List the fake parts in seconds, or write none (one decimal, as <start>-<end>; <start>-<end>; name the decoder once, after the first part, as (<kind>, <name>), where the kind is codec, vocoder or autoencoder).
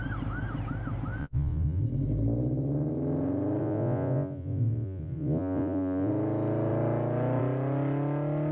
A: 1.2-1.8 (vocoder, Vocos); 3.6-6.1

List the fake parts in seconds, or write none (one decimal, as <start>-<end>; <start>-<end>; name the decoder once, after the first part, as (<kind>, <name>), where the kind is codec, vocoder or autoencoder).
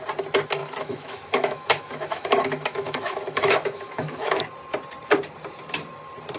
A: 0.6-4.4 (autoencoder, DAC-VAE)